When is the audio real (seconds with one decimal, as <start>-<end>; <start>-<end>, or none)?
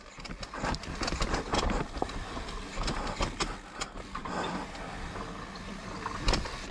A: 0.0-6.7